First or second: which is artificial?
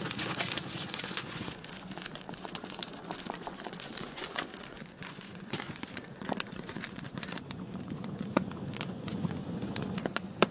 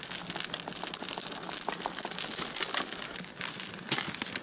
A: first